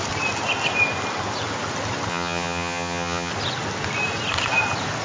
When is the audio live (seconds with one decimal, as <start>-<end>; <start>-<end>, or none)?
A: 0.0-2.1; 3.3-5.0